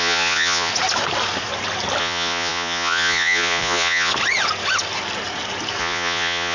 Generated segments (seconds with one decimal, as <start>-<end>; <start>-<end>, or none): 0.0-0.7; 2.0-4.1; 5.8-6.5